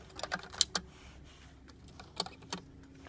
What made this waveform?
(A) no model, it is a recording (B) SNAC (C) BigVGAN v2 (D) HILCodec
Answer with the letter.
A